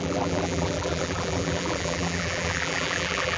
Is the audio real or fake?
fake